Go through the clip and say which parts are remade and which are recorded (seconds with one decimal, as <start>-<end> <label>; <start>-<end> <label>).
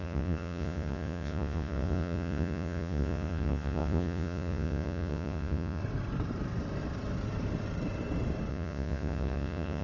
0.0-5.8 remade; 5.8-8.5 recorded; 8.5-9.8 remade